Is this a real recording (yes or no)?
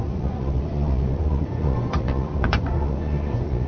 no